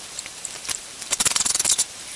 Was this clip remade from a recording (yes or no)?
yes